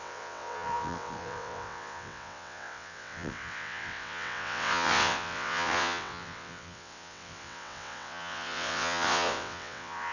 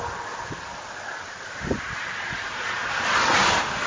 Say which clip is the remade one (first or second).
first